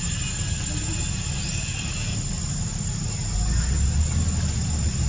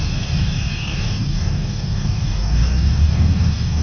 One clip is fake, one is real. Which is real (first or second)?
first